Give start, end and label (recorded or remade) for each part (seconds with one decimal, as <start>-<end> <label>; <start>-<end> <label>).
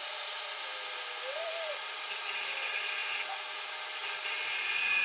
0.0-5.0 recorded